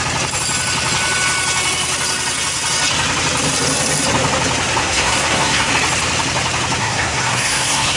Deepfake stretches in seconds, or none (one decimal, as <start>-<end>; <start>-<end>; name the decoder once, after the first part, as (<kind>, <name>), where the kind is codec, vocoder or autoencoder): 4.8-5.7 (codec, SNAC); 6.8-8.0